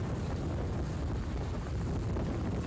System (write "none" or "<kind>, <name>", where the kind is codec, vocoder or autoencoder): none